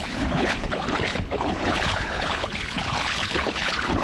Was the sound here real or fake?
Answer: fake